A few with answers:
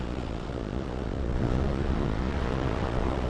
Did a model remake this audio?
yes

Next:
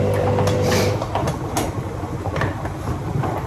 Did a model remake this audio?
no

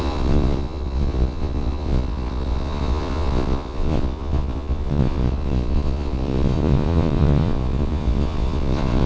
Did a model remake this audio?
yes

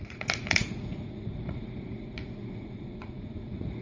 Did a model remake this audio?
yes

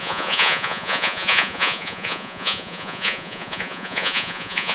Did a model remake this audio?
yes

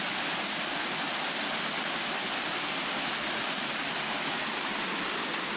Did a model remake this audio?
no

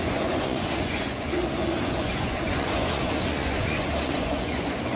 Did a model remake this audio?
yes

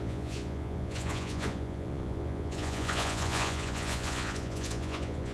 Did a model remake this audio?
yes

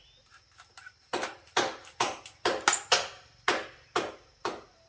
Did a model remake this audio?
no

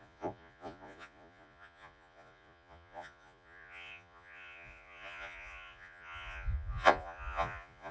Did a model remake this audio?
yes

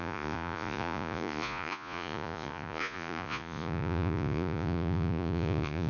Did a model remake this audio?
yes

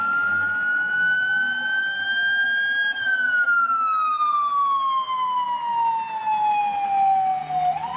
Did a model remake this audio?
no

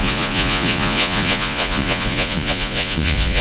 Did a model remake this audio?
yes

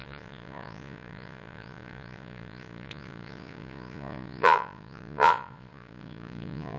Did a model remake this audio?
yes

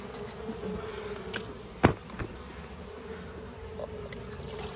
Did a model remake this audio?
no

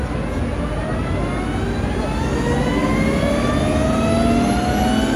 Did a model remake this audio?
no